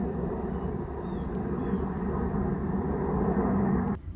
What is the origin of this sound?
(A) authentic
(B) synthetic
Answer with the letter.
B